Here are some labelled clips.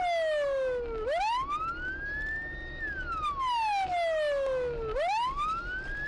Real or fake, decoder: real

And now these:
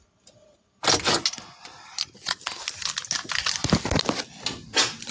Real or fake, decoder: real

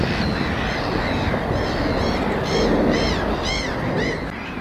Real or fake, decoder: real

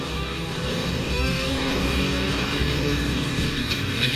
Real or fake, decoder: fake, codec, DAC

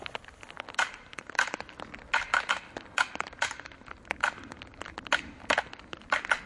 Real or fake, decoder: real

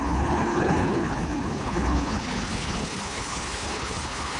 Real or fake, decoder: fake, codec, HILCodec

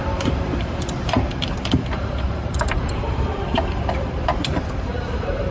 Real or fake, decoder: fake, vocoder, BigVGAN v2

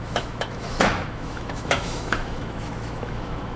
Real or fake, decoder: fake, autoencoder, DAC-VAE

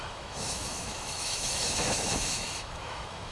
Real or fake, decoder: fake, autoencoder, DAC-VAE